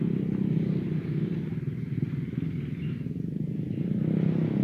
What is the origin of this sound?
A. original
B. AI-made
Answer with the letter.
A